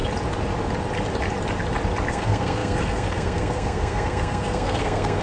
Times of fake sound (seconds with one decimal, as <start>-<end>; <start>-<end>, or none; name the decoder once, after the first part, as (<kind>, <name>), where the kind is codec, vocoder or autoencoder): 2.1-5.2 (codec, SNAC)